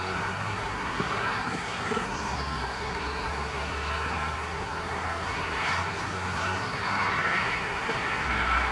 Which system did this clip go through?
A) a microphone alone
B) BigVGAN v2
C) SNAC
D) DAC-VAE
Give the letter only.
C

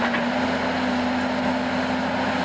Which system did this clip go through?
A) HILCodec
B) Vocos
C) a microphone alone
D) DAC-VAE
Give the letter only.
C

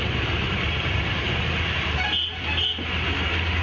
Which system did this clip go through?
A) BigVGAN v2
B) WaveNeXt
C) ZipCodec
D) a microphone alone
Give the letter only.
D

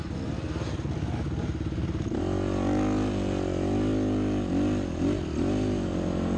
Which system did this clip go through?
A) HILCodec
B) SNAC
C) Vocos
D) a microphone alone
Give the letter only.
D